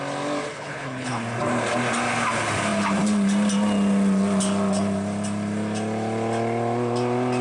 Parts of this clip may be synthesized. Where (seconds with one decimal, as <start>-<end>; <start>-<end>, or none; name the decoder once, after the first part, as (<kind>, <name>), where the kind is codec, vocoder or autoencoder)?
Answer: 0.5-1.1 (codec, HILCodec)